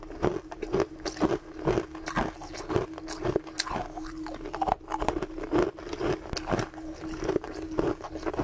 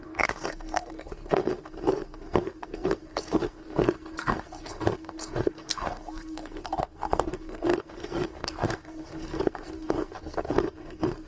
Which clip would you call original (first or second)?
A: first